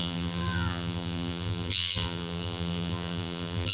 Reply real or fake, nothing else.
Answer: fake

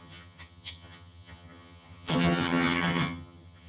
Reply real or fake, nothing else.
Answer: fake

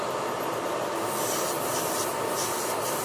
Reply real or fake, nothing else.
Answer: real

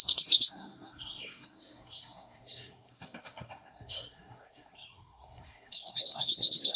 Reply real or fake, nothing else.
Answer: fake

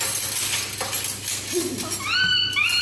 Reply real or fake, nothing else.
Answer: real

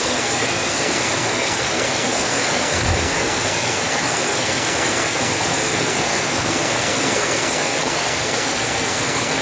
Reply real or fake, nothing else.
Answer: fake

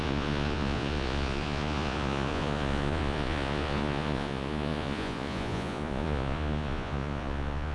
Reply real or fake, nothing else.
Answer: fake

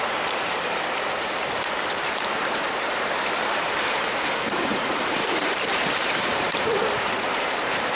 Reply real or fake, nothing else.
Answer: fake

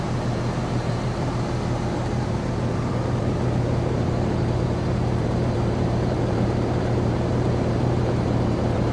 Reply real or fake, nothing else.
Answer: fake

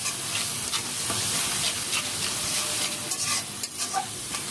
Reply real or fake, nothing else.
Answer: fake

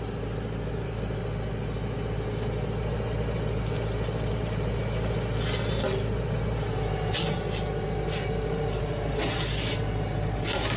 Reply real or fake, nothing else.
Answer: real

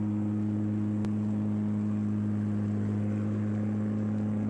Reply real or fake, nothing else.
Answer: real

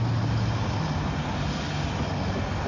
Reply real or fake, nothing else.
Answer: real